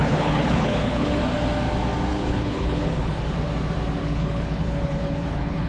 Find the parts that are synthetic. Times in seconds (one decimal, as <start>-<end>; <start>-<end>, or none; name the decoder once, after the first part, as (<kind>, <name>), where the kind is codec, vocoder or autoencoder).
0.0-1.2 (codec, HILCodec); 2.1-3.2; 4.0-5.7